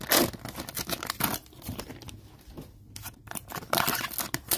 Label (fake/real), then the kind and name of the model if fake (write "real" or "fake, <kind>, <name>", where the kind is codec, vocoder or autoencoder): real